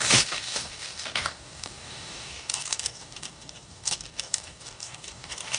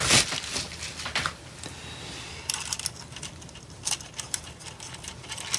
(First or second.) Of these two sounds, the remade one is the first